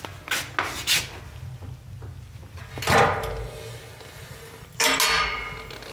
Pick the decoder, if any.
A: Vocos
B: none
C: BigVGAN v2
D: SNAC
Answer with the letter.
B